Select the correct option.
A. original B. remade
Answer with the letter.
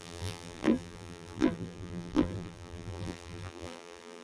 B